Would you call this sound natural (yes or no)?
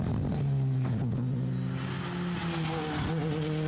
yes